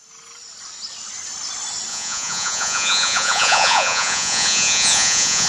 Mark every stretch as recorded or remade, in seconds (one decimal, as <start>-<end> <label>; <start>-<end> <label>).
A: 0.0-1.9 recorded; 1.9-5.5 remade